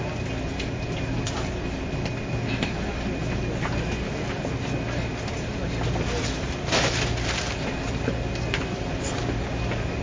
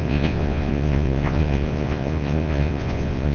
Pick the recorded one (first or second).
first